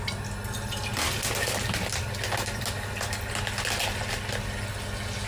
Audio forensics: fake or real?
real